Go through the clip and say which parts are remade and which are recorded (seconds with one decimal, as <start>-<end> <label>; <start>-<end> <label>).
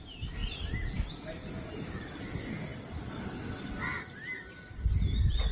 0.0-5.5 recorded